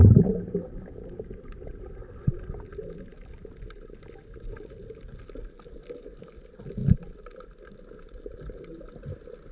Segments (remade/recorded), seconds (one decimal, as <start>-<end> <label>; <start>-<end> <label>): 0.0-9.5 recorded